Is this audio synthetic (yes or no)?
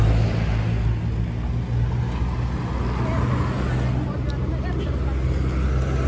no